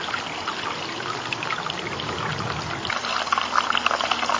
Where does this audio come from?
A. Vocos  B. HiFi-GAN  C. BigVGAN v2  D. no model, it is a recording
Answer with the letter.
D